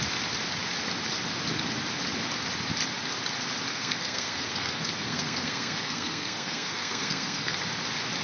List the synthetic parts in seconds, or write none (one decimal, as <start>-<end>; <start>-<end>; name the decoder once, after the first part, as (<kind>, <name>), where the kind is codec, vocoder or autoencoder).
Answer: 3.7-7.6 (codec, SNAC)